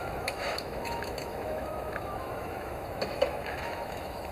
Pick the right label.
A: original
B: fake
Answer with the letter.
B